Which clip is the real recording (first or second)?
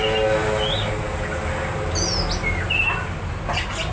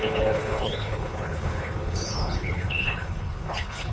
first